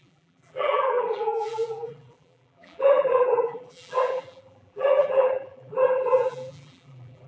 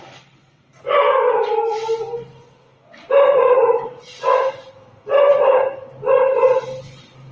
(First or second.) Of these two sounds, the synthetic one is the first